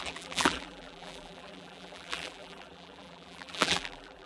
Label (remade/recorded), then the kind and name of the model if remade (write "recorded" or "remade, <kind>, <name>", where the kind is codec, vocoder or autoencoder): remade, vocoder, BigVGAN v2